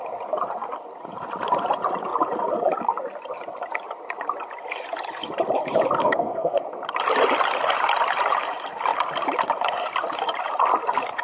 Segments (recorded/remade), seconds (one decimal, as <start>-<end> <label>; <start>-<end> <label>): 0.0-6.0 recorded; 6.0-6.6 remade; 6.6-11.2 recorded